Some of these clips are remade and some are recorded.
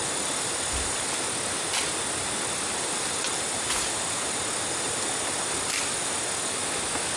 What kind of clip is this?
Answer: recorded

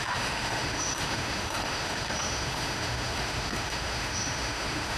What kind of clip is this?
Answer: remade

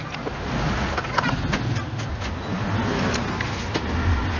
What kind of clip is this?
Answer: recorded